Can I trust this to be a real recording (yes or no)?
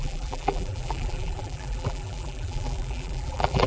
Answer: no